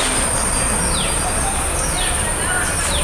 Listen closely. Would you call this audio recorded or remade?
recorded